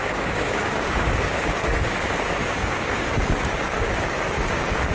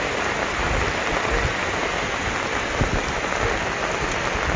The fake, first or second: first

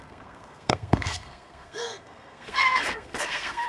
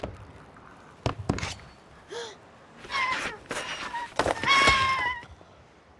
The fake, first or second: first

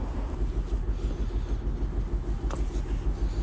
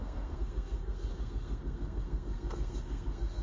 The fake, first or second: second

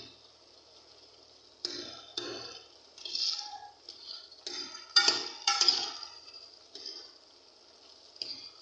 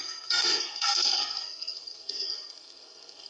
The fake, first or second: second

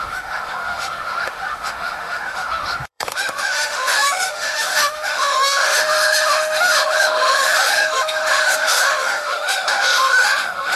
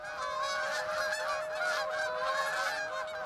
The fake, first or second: first